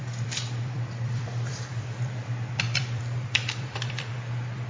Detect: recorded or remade remade